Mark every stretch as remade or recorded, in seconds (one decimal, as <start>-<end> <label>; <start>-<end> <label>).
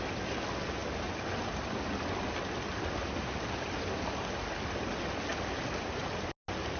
0.0-5.3 recorded; 5.3-6.0 remade; 6.0-6.8 recorded